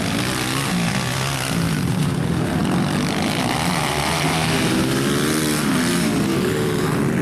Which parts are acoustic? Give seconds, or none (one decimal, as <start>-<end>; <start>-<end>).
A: 0.0-7.2